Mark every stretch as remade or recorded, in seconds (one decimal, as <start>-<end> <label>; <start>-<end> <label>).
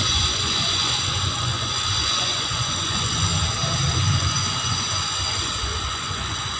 0.0-3.3 remade; 3.3-3.9 recorded; 3.9-6.6 remade